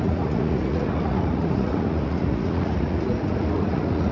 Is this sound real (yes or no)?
no